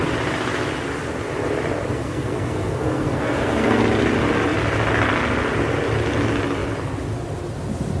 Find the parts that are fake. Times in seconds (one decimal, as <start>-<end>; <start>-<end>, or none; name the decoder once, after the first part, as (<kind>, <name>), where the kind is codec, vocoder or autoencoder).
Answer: 1.9-3.8 (codec, SNAC)